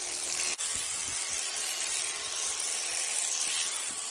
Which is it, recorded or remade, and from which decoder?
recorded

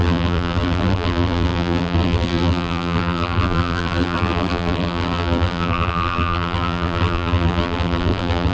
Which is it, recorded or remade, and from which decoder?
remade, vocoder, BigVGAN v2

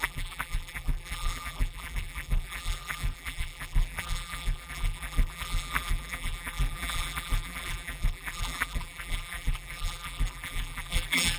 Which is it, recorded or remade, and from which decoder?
remade, vocoder, BigVGAN v2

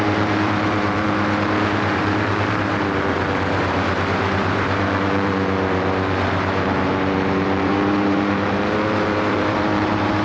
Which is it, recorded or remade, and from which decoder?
remade, vocoder, BigVGAN v2